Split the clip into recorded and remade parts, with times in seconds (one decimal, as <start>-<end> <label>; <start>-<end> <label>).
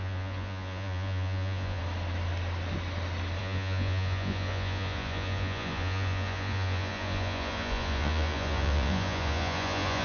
0.0-1.8 remade; 1.8-3.4 recorded; 3.4-10.0 remade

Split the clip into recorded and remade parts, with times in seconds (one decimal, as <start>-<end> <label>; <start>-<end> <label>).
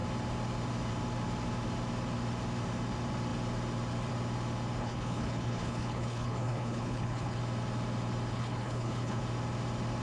0.0-4.8 recorded; 4.8-7.4 remade; 7.4-8.3 recorded; 8.3-9.2 remade; 9.2-10.0 recorded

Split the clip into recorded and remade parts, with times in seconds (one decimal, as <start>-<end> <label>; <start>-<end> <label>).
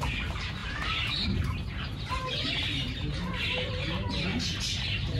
0.0-0.6 recorded; 0.6-3.7 remade; 3.7-4.3 recorded; 4.3-5.2 remade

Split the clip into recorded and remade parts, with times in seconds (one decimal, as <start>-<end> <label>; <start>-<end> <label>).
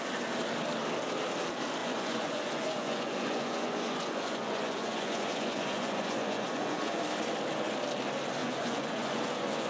0.0-1.8 recorded; 1.8-7.0 remade; 7.0-8.4 recorded; 8.4-9.7 remade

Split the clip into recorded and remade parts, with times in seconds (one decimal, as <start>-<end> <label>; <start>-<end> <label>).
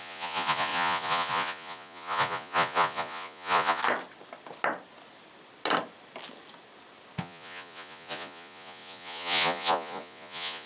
0.0-3.8 remade; 3.8-7.2 recorded; 7.2-10.7 remade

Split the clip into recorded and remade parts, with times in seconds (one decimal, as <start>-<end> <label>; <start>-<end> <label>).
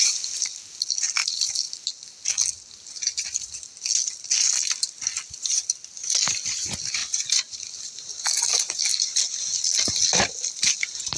0.0-11.2 recorded